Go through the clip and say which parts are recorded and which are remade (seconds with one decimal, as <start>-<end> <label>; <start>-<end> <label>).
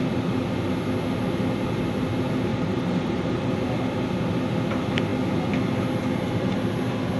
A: 0.0-2.5 recorded; 2.5-3.5 remade; 3.5-7.2 recorded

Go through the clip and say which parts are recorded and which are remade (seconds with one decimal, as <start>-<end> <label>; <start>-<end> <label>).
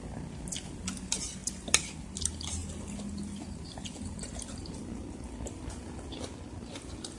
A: 0.0-1.4 recorded; 1.4-1.9 remade; 1.9-7.2 recorded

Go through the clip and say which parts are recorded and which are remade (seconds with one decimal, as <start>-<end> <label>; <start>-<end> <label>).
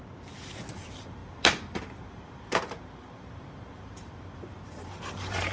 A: 0.0-0.7 recorded; 0.7-5.5 remade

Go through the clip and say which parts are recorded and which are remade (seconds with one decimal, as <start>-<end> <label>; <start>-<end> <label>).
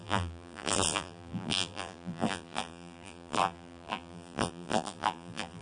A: 0.0-5.6 remade